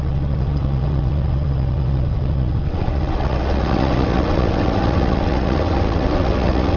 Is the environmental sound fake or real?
fake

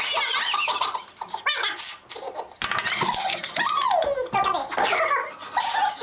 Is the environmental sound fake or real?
real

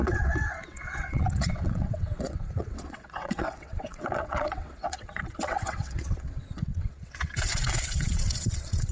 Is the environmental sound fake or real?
fake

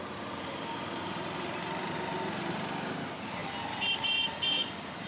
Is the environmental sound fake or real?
real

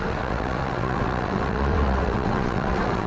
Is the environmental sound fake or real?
fake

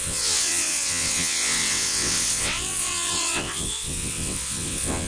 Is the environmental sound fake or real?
fake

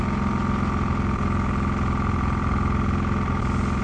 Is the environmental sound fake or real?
real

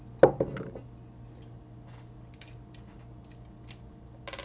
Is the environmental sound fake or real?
real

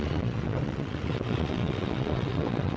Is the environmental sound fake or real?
fake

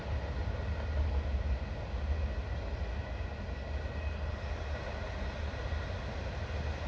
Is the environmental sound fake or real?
real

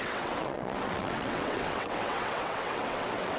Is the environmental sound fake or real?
fake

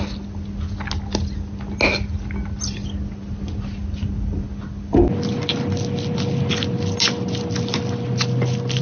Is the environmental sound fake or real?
real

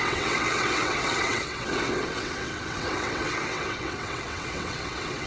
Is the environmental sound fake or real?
fake